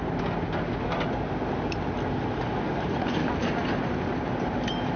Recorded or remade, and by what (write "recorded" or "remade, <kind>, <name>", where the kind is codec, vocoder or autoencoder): recorded